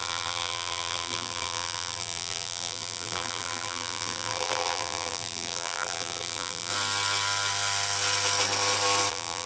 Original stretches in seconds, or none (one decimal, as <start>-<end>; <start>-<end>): 6.7-9.1